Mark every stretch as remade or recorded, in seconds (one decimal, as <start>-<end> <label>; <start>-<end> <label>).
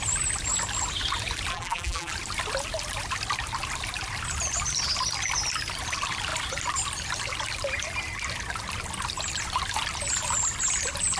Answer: 0.0-1.5 recorded; 1.5-2.1 remade; 2.1-11.2 recorded